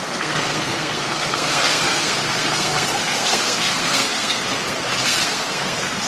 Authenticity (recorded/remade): remade